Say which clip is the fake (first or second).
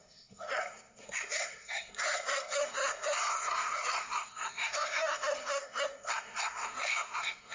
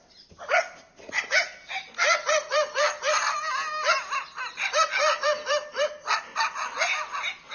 first